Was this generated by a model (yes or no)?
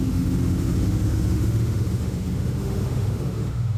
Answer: yes